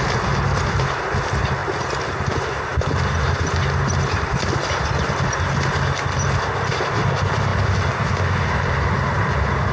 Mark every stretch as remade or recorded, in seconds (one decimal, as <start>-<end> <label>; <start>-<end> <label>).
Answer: 0.0-9.7 recorded